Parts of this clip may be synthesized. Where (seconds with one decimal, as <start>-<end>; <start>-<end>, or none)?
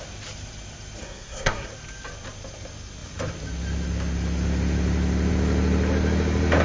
1.0-1.7